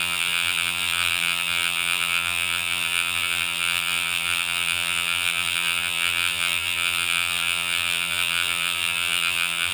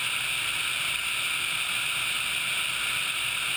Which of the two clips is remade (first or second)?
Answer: first